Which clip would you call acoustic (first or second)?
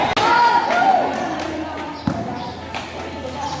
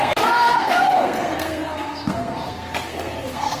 first